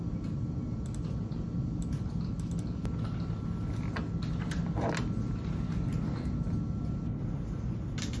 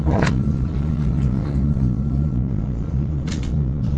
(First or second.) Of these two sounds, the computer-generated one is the second